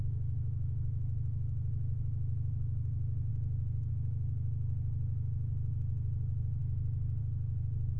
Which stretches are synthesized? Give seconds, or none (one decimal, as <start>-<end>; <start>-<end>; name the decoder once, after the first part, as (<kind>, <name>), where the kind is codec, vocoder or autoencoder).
0.0-6.6 (autoencoder, DAC-VAE); 7.2-8.0